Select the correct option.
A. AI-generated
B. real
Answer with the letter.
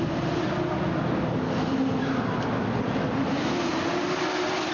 B